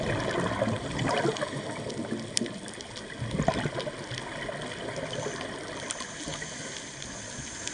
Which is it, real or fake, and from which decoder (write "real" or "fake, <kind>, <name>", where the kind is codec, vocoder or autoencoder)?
real